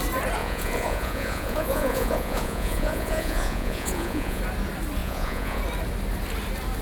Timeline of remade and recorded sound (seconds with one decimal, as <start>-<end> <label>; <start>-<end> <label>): 0.0-0.4 recorded; 0.4-4.4 remade; 4.4-5.0 recorded; 5.0-5.6 remade; 5.6-6.8 recorded